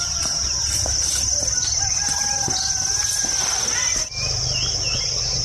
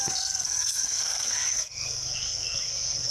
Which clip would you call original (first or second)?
first